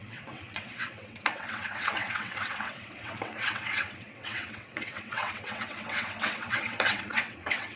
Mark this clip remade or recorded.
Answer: remade